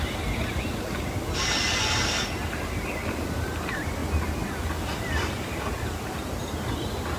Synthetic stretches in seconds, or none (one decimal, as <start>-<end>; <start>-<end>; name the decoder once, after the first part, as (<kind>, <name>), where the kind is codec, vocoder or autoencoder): none